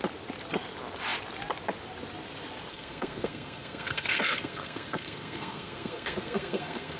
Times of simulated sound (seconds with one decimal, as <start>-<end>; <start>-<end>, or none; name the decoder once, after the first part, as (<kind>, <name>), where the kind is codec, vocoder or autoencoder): 2.7-7.0 (codec, SNAC)